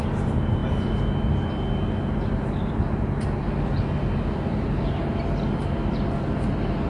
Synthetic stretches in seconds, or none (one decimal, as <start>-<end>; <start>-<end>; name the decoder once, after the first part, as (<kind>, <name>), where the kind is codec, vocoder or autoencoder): none